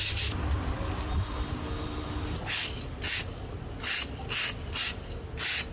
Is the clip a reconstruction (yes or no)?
no